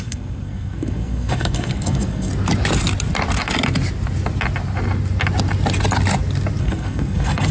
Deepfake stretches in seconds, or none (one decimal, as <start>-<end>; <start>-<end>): 0.0-2.3; 6.6-7.5